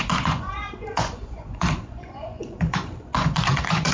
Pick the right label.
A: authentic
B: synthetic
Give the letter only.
B